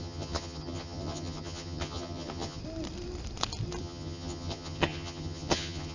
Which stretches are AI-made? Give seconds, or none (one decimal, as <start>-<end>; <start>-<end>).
0.0-2.6; 3.8-5.9